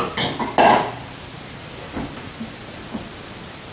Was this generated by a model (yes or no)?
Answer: no